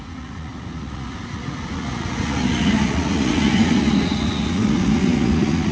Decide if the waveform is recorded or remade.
remade